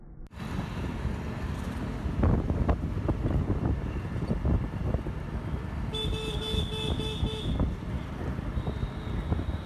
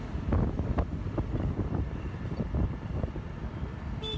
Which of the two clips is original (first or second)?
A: first